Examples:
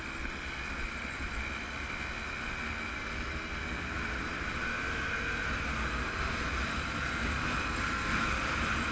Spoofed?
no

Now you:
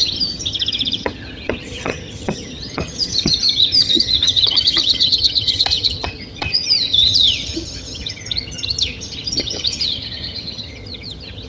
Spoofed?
yes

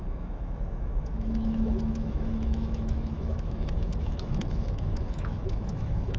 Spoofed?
yes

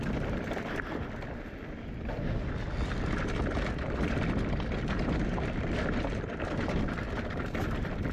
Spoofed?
no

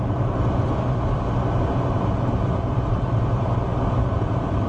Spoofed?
yes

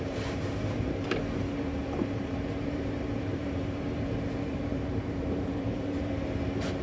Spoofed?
yes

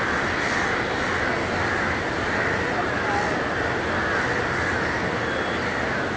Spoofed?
no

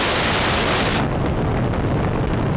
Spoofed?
no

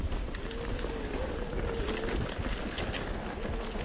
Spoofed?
no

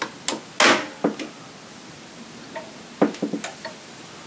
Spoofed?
no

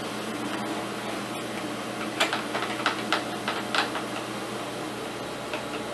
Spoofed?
no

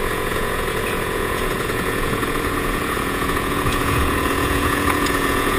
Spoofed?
yes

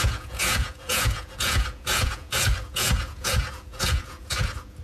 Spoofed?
yes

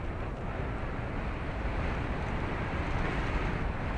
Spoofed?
no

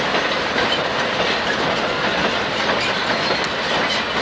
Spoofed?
no